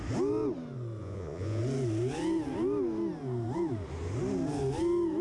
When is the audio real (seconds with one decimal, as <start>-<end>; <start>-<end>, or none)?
0.0-1.0; 1.6-5.2